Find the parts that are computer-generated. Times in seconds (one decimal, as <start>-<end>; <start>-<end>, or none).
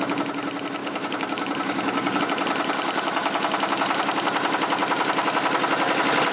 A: 0.8-2.2